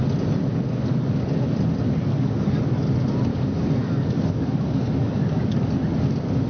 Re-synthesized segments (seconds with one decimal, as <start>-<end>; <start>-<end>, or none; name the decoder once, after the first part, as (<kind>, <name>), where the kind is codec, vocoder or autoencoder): 2.1-2.6 (codec, DAC); 3.3-5.6